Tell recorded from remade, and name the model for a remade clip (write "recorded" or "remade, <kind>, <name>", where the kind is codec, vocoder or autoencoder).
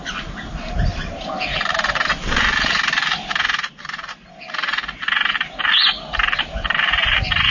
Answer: recorded